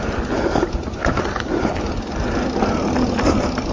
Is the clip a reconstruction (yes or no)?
no